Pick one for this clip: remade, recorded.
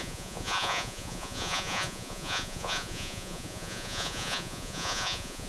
remade